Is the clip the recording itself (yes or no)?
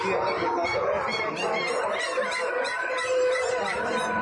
no